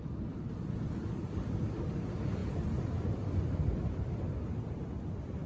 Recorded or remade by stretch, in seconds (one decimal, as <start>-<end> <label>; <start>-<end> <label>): 0.0-2.4 recorded; 2.4-4.8 remade; 4.8-5.5 recorded